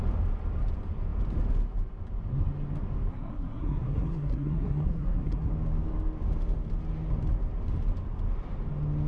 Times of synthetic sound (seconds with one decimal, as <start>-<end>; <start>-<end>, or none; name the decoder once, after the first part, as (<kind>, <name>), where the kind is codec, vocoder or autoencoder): 3.1-5.5 (codec, SNAC)